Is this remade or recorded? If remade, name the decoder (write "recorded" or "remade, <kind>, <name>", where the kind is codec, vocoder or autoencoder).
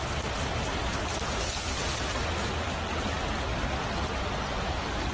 recorded